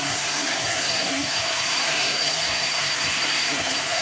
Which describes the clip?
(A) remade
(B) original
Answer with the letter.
A